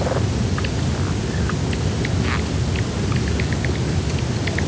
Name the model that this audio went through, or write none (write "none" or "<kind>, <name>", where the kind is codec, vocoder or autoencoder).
none